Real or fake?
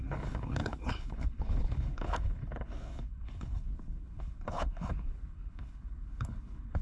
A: fake